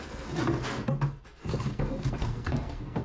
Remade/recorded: remade